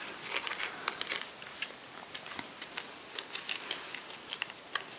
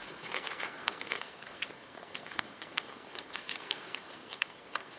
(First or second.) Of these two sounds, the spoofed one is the second